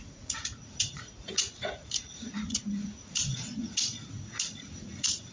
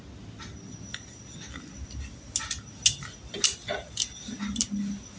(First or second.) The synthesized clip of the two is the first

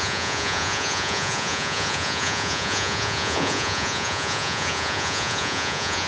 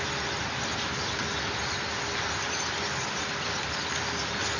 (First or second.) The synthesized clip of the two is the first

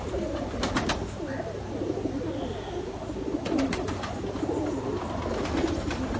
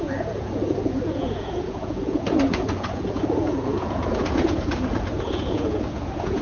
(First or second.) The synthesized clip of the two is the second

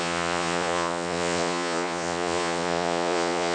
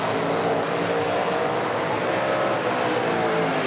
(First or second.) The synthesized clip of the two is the first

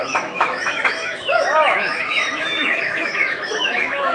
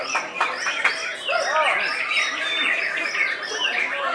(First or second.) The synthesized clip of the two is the first